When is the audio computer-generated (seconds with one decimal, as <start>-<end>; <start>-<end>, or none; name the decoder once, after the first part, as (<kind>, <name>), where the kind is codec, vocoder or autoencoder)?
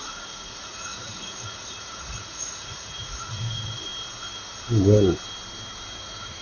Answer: 0.0-3.9 (vocoder, Vocos); 5.9-6.4